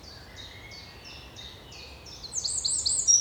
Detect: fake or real real